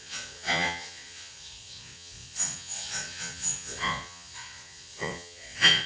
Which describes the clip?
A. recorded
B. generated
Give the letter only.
B